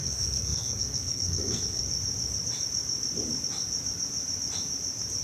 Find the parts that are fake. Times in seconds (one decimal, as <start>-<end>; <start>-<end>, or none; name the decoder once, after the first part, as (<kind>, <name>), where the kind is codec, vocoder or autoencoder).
0.0-1.8 (codec, SNAC)